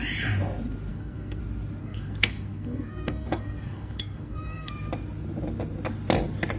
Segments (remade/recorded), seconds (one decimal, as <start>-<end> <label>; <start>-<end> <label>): 0.0-0.9 recorded; 0.9-1.4 remade; 1.4-1.8 recorded; 1.8-4.7 remade; 4.7-6.6 recorded